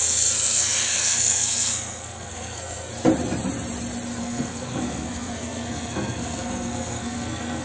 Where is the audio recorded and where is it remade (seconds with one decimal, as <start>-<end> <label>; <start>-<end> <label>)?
0.0-2.9 remade; 2.9-4.2 recorded; 4.2-7.6 remade